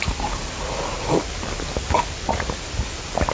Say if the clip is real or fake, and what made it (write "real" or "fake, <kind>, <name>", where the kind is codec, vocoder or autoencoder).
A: fake, vocoder, BigVGAN v2